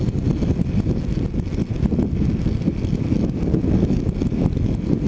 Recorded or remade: recorded